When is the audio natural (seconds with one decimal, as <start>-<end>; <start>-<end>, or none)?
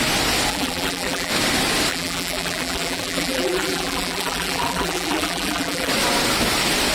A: 0.0-0.5; 1.3-1.9; 5.9-6.9